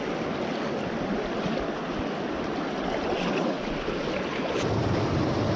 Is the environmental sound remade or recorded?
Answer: recorded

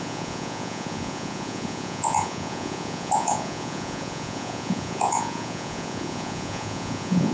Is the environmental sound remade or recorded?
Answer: remade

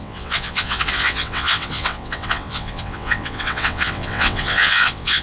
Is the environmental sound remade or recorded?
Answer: remade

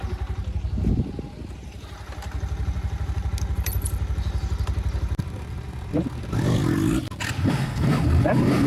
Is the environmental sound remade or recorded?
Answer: recorded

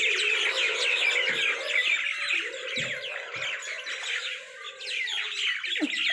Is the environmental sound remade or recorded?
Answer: recorded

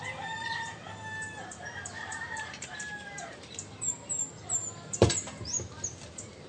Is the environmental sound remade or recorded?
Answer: remade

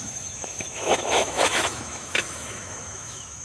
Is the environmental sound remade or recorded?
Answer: remade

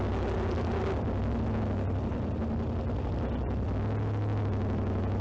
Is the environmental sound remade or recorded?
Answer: recorded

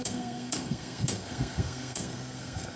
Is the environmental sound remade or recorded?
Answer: remade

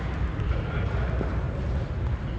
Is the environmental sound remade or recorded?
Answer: recorded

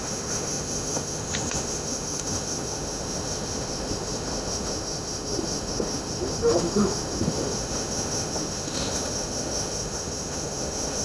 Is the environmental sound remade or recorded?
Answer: remade